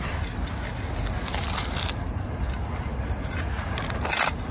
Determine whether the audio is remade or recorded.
recorded